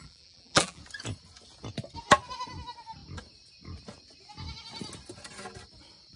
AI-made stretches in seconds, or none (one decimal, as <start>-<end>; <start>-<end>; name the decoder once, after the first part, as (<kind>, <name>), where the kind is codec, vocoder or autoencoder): 0.0-0.8 (vocoder, BigVGAN v2)